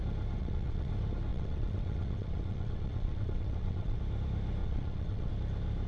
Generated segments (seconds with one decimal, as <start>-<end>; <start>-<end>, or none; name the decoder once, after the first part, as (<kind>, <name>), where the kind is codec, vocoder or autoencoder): 0.4-0.9 (vocoder, WaveNeXt); 1.3-4.0; 4.6-5.3